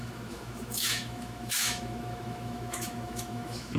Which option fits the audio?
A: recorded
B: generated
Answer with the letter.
B